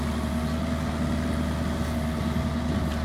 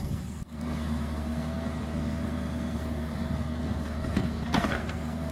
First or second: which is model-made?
second